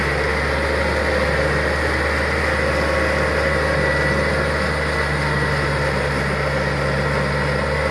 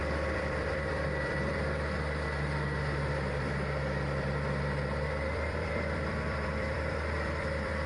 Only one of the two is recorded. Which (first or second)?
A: first